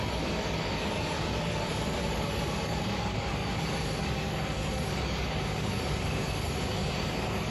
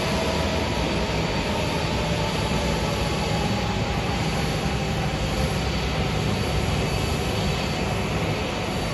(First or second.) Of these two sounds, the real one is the second